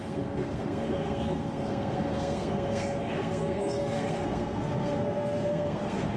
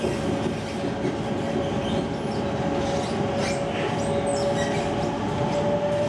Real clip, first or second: second